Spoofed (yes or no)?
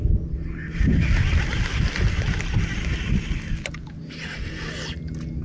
no